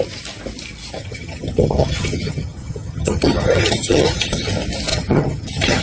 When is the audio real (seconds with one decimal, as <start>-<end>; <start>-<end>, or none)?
0.0-1.0; 4.5-4.9